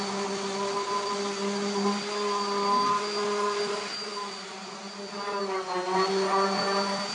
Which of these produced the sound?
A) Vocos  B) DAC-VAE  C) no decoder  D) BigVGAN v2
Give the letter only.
C